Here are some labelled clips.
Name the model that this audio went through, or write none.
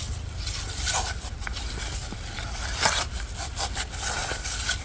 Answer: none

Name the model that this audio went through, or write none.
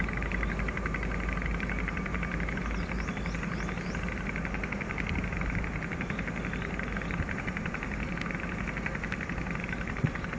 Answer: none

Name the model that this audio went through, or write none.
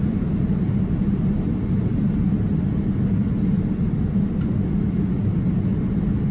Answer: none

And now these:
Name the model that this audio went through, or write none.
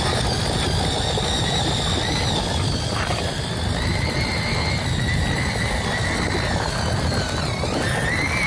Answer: none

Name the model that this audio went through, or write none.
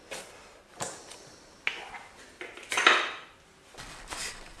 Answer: none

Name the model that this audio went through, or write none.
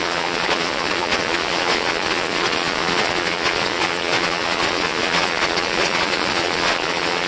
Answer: vocoder, Vocos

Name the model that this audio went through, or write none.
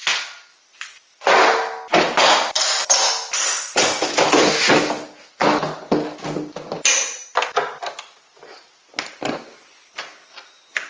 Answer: none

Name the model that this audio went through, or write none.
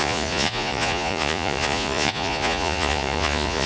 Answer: vocoder, Vocos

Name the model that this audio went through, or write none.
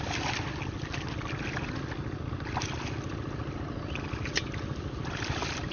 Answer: none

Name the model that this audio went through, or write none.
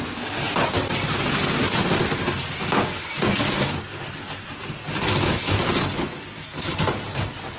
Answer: none